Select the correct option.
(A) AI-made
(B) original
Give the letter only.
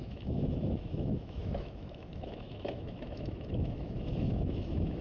A